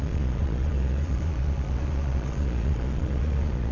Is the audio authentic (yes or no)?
no